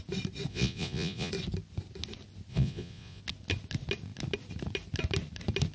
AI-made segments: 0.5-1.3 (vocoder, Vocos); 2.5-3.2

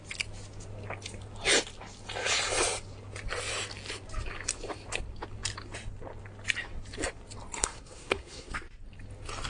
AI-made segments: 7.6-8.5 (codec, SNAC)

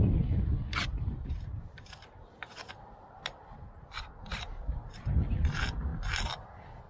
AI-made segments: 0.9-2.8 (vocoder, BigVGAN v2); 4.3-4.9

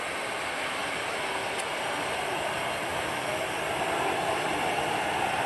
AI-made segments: 2.9-3.4 (autoencoder, DAC-VAE)

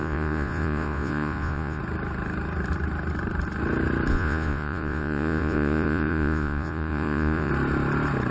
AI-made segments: 0.0-1.8 (vocoder, Vocos); 4.1-7.5

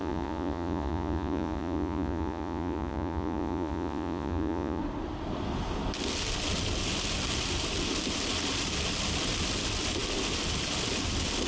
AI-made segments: 0.0-4.8 (vocoder, Vocos)

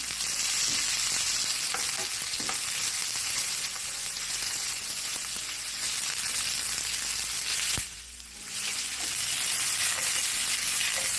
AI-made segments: 3.2-5.9 (vocoder, Vocos); 7.5-9.0

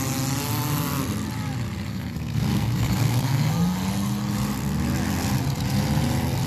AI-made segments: 1.9-3.5 (codec, SNAC)